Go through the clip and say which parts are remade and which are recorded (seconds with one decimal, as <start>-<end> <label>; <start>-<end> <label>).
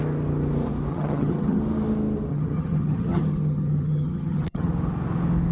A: 0.0-0.9 recorded; 0.9-1.6 remade; 1.6-2.3 recorded; 2.3-4.7 remade; 4.7-5.5 recorded